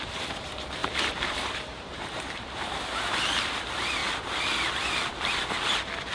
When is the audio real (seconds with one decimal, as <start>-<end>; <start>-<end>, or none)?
0.0-0.8; 2.8-6.1